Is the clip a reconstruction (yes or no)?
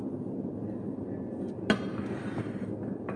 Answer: no